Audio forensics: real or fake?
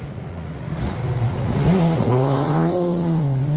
fake